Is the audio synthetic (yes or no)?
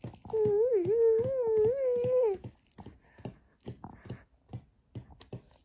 no